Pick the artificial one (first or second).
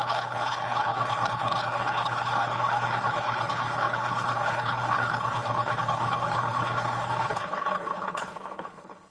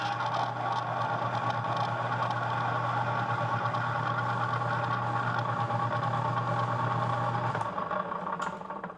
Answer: first